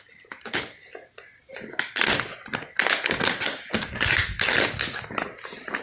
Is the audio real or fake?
real